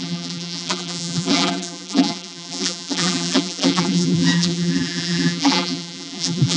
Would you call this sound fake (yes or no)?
yes